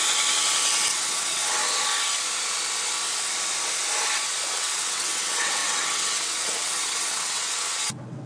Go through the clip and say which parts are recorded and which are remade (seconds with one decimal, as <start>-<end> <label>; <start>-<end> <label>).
0.0-0.9 recorded; 0.9-1.6 remade; 1.6-4.5 recorded; 4.5-8.3 remade